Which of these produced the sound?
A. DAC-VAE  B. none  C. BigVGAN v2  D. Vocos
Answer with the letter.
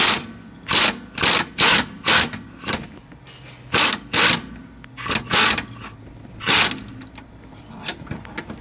B